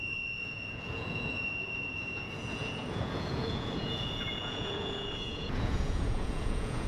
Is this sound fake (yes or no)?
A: yes